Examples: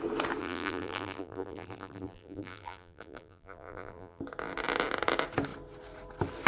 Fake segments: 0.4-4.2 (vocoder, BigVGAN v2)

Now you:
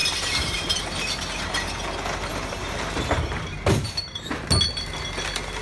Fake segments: 0.0-1.5 (vocoder, BigVGAN v2); 2.3-4.4